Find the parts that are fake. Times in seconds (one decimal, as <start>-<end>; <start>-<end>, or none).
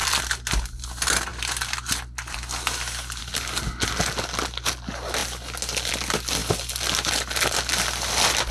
0.0-0.5